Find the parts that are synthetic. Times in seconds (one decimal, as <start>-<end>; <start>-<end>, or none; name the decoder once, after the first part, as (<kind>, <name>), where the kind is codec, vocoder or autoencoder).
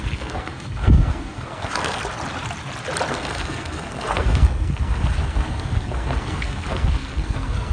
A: 0.0-2.0 (codec, SNAC); 3.1-7.7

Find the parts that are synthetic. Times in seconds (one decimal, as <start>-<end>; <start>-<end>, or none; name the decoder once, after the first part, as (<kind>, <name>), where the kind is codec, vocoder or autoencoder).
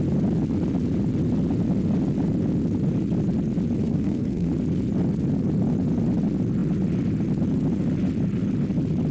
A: 3.8-4.5 (codec, SNAC)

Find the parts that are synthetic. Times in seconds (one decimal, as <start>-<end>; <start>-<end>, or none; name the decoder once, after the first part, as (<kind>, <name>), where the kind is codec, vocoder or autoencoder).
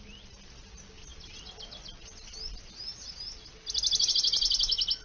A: none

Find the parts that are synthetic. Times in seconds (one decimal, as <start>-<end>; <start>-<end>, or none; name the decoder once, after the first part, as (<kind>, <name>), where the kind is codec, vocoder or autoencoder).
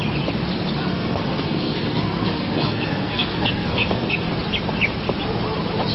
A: 0.8-4.3 (codec, SNAC)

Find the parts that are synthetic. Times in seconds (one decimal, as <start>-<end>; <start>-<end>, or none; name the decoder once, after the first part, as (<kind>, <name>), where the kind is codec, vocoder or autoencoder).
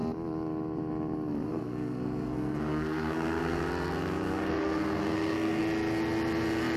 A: 1.5-5.6 (codec, SNAC)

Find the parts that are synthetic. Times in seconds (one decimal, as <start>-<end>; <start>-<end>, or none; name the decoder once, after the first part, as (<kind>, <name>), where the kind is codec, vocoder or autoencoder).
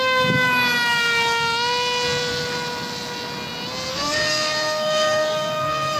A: 3.9-6.0 (codec, SNAC)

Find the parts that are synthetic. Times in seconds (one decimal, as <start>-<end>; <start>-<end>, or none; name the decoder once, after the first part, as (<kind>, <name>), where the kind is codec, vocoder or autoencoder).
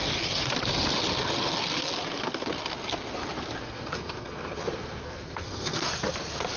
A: 3.6-5.9 (codec, SNAC)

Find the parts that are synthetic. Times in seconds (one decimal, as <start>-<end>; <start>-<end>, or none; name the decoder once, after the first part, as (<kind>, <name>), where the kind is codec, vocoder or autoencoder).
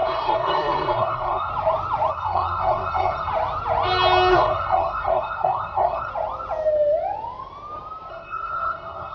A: 0.0-1.5 (codec, SNAC); 2.1-3.3; 4.3-6.1; 8.1-9.1